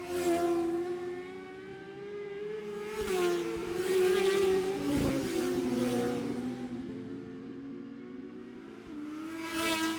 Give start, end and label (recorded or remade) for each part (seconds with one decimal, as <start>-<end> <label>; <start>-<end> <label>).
0.0-1.7 recorded; 1.7-2.6 remade; 2.6-3.6 recorded; 3.6-7.7 remade; 7.7-10.0 recorded